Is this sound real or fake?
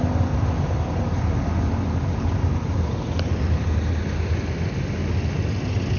real